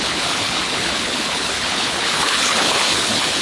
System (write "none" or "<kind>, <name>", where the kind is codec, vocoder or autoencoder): codec, HILCodec